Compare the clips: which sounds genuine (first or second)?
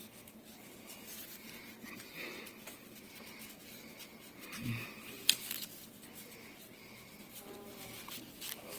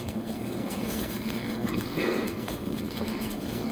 first